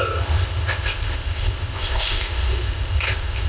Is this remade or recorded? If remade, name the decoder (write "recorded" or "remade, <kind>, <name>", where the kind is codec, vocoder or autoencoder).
remade, codec, ZipCodec